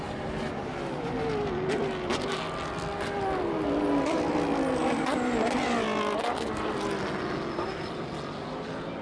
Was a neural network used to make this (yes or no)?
no